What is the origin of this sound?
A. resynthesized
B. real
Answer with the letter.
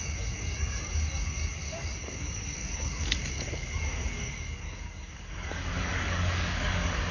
A